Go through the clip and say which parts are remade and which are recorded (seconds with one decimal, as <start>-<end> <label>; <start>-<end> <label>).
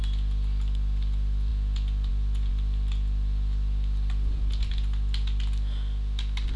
0.0-6.6 recorded